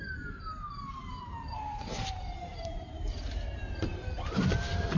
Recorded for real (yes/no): no